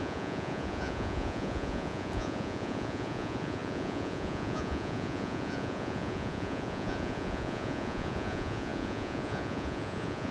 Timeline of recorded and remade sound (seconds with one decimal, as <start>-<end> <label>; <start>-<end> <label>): 0.0-10.3 remade